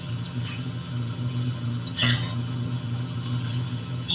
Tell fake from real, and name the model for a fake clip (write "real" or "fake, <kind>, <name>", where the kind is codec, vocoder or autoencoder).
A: fake, vocoder, HiFi-GAN